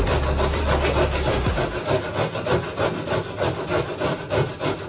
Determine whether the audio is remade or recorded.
recorded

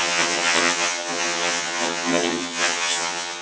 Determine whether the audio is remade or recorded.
remade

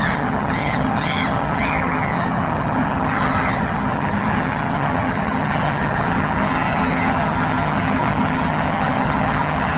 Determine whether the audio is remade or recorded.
remade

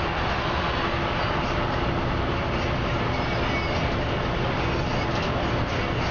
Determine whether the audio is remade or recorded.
recorded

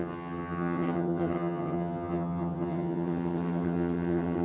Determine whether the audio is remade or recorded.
remade